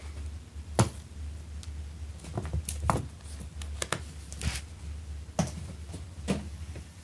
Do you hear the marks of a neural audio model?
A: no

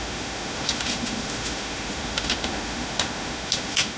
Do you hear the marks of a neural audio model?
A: yes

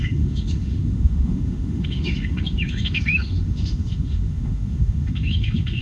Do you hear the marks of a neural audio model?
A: yes